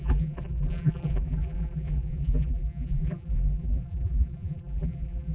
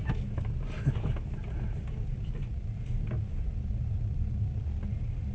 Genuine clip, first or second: second